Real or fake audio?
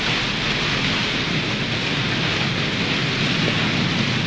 real